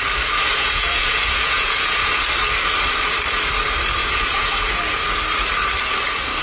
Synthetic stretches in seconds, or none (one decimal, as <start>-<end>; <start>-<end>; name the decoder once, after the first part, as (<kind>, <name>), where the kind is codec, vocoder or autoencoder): 0.5-2.3 (vocoder, Vocos); 4.0-4.8